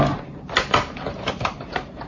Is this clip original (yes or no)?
no